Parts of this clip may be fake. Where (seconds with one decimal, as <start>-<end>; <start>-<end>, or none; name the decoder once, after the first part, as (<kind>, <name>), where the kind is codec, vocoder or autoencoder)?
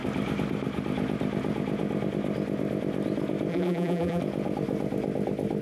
3.5-4.2 (vocoder, BigVGAN v2)